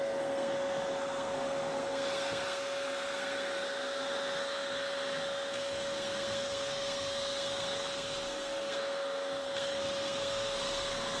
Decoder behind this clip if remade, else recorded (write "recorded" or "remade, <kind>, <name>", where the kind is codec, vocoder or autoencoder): remade, codec, SNAC